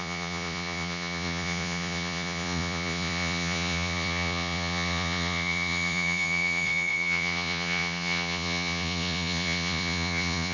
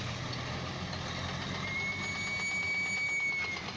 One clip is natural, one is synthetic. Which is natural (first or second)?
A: second